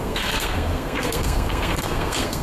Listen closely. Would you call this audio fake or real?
fake